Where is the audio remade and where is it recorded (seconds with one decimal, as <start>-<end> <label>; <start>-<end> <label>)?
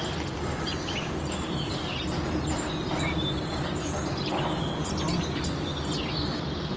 0.0-6.8 recorded